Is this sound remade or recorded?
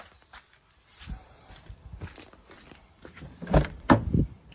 recorded